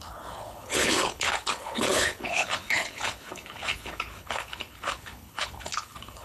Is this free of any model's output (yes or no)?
no